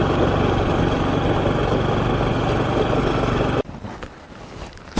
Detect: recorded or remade recorded